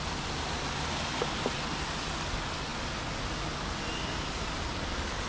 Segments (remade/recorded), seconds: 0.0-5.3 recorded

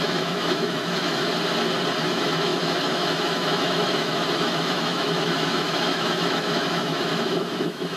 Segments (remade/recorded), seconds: 0.0-1.3 remade; 1.3-2.0 recorded; 2.0-8.0 remade

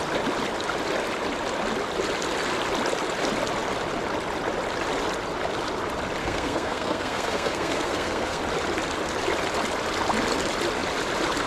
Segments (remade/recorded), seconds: 0.0-6.2 recorded; 6.2-8.4 remade; 8.4-11.5 recorded

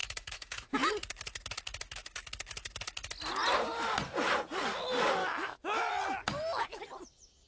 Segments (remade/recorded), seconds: 0.0-0.9 remade; 0.9-5.2 recorded; 5.2-5.9 remade; 5.9-7.5 recorded

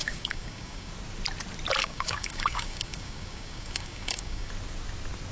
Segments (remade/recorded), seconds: 0.0-0.9 remade; 0.9-1.8 recorded; 1.8-4.5 remade; 4.5-5.3 recorded

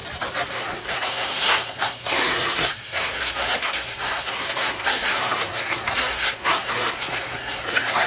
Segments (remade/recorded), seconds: 0.0-0.5 recorded; 0.5-8.1 remade

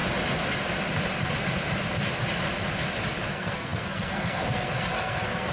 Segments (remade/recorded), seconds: 0.0-3.3 recorded; 3.3-5.5 remade